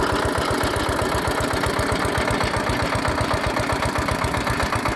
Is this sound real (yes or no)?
yes